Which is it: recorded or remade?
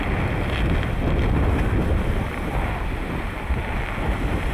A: recorded